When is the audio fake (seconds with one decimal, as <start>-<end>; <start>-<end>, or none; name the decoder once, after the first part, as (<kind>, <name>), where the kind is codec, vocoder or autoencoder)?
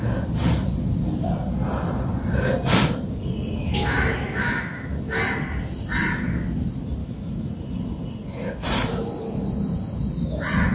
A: 3.6-5.2 (autoencoder, DAC-VAE); 7.0-7.5